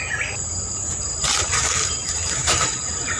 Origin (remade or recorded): recorded